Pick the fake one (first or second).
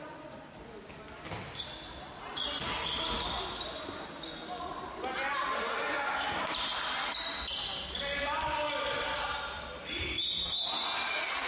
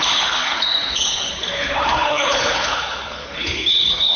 second